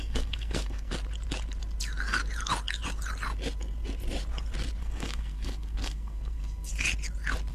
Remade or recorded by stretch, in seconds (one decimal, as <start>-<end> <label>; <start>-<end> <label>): 0.0-0.9 remade; 0.9-4.8 recorded; 4.8-6.7 remade; 6.7-7.5 recorded